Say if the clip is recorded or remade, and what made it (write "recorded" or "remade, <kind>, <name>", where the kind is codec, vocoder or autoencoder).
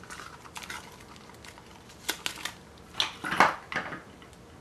recorded